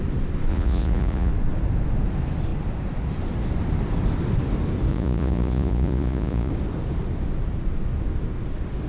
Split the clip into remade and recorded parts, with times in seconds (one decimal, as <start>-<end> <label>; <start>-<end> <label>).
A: 0.0-0.5 recorded; 0.5-1.3 remade; 1.3-4.9 recorded; 4.9-6.5 remade; 6.5-8.9 recorded